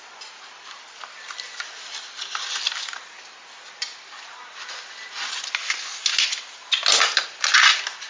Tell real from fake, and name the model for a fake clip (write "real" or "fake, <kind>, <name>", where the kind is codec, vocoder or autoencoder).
real